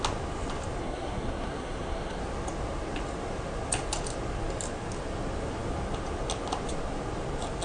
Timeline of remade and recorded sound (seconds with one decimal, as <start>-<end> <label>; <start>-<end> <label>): 0.0-0.8 recorded; 0.8-2.2 remade; 2.2-7.6 recorded